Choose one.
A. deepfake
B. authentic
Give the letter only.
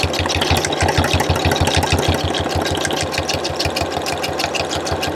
B